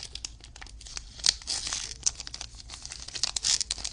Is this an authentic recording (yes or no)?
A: yes